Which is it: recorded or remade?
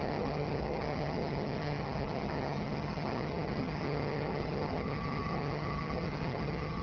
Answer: remade